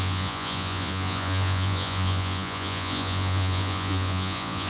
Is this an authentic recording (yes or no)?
no